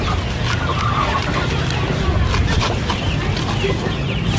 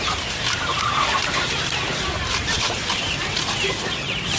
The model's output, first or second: second